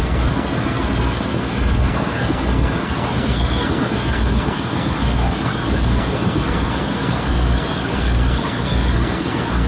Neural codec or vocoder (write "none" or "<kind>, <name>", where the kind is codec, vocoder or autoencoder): codec, SNAC